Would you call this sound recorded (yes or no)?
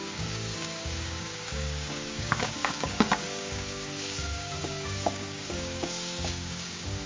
no